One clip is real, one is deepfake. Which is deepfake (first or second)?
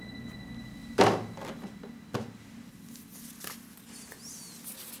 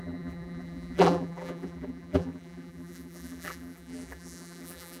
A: second